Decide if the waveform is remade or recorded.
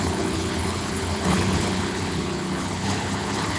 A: remade